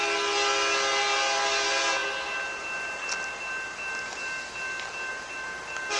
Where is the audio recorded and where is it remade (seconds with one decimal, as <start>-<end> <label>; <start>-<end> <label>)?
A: 0.0-6.0 recorded